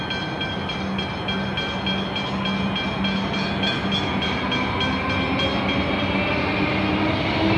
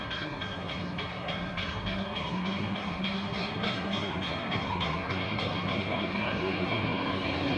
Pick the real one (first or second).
first